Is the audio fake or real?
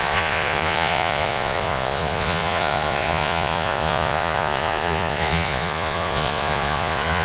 fake